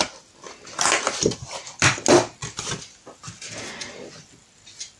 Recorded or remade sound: recorded